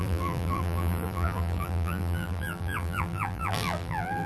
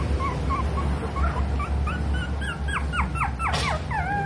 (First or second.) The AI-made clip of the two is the first